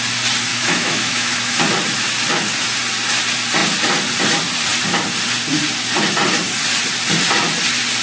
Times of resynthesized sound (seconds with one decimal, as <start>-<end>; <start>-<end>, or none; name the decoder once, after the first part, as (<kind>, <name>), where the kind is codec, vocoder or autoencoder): 0.5-1.6 (autoencoder, DAC-VAE)